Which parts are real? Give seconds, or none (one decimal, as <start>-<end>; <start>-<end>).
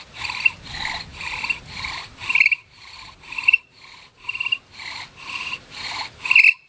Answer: 0.0-1.1; 4.0-6.7